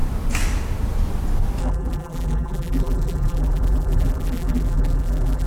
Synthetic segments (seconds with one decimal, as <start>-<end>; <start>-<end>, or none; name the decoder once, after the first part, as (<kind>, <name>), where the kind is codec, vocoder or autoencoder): 1.6-5.5 (vocoder, BigVGAN v2)